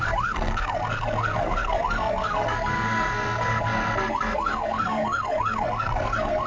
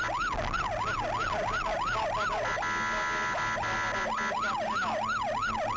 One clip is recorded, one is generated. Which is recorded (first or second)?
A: second